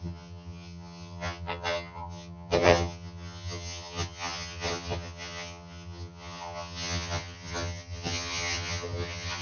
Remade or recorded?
remade